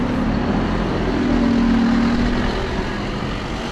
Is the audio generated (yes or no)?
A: no